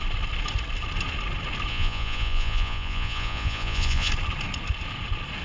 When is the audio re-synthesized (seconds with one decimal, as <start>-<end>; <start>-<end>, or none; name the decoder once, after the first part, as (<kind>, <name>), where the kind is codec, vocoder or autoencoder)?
1.7-4.1 (vocoder, Vocos)

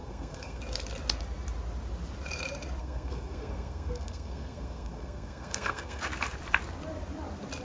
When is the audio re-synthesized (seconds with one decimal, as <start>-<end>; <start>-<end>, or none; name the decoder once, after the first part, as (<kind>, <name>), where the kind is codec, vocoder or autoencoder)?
0.0-0.6 (codec, SNAC); 2.8-6.0